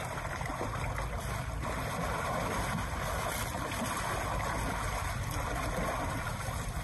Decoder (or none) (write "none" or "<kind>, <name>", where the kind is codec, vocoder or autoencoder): none